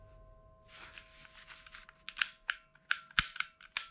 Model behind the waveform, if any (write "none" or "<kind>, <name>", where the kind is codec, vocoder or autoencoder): none